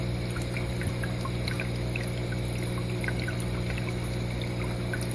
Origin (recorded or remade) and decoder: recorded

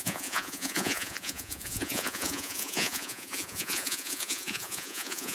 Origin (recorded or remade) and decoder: remade, vocoder, Vocos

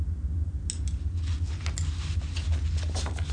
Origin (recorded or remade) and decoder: recorded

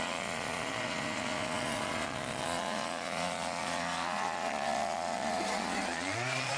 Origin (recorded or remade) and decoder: remade, vocoder, Vocos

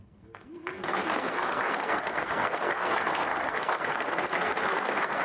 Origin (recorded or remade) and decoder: remade, codec, SNAC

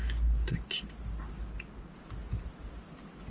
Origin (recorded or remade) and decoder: recorded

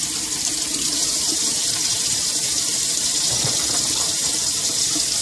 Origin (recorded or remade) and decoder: remade, vocoder, BigVGAN v2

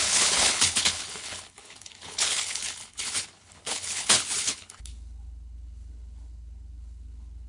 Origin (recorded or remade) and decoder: remade, codec, HILCodec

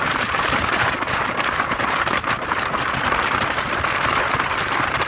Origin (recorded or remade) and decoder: remade, vocoder, BigVGAN v2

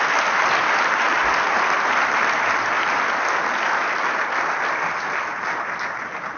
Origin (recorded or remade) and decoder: recorded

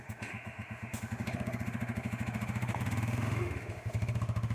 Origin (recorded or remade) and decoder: remade, autoencoder, DAC-VAE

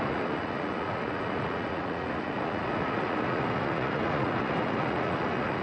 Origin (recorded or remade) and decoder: remade, vocoder, Vocos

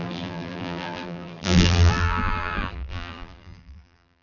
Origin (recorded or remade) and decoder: remade, vocoder, BigVGAN v2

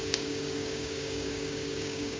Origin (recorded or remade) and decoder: remade, codec, DAC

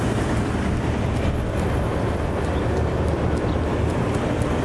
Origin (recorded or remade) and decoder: remade, vocoder, BigVGAN v2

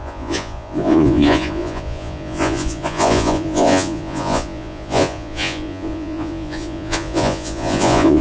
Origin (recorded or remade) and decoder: remade, vocoder, Vocos